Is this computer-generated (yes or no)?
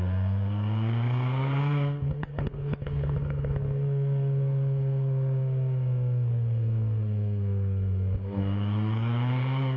yes